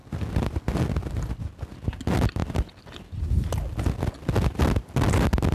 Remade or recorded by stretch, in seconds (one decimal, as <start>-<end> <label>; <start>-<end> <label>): 0.0-5.5 recorded